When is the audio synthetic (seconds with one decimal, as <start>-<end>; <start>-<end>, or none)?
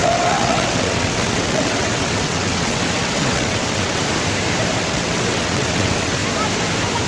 0.0-4.0; 4.8-6.2